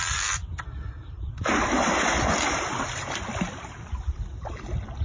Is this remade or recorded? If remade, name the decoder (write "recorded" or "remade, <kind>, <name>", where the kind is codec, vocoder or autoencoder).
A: recorded